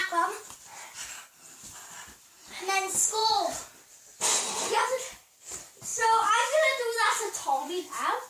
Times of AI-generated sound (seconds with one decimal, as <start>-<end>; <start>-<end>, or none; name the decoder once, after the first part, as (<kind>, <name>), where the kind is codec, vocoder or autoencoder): 5.9-7.7 (vocoder, BigVGAN v2)